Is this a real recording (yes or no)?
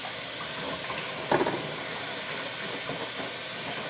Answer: yes